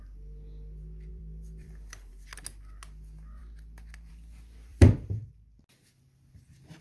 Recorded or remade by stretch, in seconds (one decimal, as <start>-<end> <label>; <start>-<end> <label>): 0.0-1.1 recorded; 1.1-2.1 remade; 2.1-3.4 recorded; 3.4-4.1 remade; 4.1-4.7 recorded; 4.7-5.3 remade; 5.3-6.8 recorded